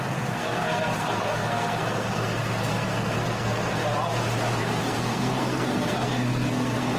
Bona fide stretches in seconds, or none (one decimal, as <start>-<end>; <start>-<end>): 3.8-4.6